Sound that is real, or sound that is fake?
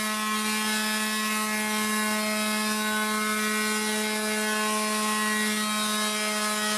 real